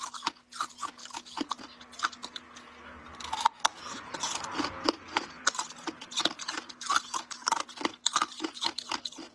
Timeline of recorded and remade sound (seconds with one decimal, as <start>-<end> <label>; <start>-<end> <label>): 0.0-9.3 recorded